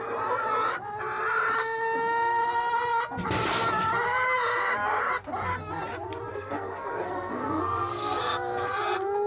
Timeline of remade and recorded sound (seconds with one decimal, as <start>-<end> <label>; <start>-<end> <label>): 0.0-6.3 recorded; 6.3-8.2 remade; 8.2-9.3 recorded